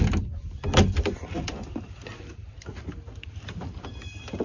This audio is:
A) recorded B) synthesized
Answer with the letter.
A